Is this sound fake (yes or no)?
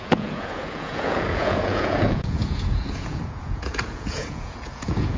yes